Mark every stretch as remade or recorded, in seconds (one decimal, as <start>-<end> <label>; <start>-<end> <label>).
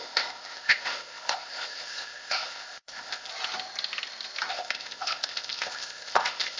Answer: 0.0-3.3 remade; 3.3-4.5 recorded; 4.5-6.6 remade